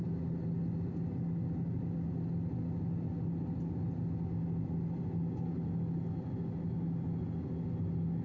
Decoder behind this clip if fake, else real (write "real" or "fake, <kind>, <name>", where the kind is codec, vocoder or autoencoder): real